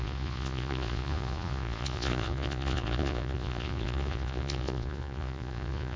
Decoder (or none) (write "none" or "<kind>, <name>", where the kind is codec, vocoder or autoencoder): vocoder, Vocos